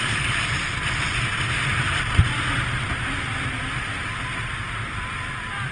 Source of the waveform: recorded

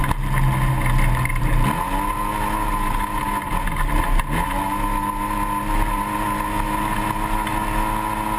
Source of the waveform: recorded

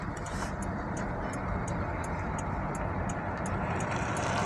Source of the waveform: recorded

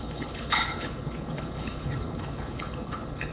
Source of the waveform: remade